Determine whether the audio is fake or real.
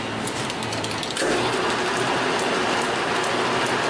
real